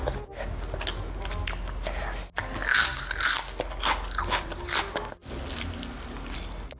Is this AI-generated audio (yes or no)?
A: no